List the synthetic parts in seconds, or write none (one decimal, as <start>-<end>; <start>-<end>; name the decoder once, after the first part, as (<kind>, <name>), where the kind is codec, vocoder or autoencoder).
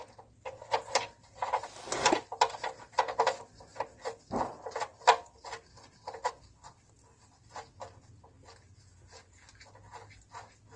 none